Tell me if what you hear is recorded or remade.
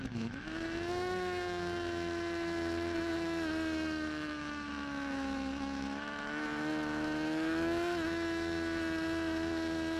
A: remade